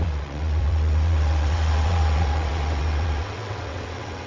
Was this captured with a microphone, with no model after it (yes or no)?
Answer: no